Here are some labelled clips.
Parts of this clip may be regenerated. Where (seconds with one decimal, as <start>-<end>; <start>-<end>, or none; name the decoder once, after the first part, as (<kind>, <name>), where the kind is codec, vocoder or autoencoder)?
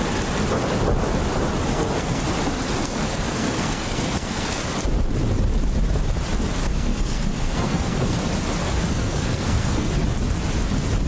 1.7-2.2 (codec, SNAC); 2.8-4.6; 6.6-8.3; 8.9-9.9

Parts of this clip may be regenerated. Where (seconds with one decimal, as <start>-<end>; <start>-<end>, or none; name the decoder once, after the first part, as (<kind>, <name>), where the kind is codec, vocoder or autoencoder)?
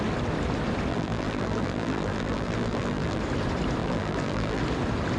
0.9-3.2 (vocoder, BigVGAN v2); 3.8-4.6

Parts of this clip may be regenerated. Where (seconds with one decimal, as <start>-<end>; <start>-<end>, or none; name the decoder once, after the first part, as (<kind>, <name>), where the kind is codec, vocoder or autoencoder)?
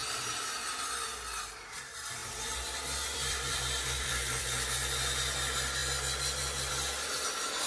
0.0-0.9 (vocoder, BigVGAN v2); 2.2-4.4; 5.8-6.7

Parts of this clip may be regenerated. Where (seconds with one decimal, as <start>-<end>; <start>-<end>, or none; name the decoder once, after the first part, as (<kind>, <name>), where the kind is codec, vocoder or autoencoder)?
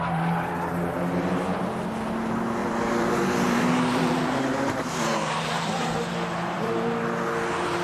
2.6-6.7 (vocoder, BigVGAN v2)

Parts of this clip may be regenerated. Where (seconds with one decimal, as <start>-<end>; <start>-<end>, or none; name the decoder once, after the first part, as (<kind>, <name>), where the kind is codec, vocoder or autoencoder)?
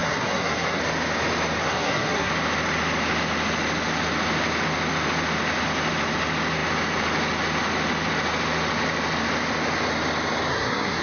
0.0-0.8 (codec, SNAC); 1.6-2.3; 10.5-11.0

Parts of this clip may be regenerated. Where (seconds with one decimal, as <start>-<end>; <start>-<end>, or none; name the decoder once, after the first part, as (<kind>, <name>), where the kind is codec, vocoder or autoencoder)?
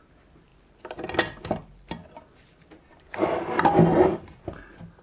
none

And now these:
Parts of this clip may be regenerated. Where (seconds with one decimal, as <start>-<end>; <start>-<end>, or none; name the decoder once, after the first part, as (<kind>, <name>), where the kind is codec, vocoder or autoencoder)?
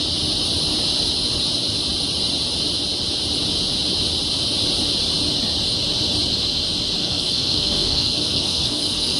7.0-9.2 (codec, SNAC)